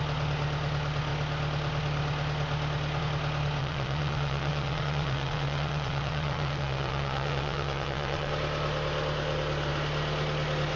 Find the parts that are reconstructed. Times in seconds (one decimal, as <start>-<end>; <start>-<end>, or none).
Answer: 3.6-8.3